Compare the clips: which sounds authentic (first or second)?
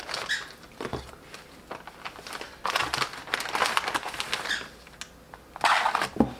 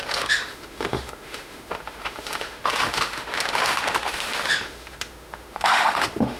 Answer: first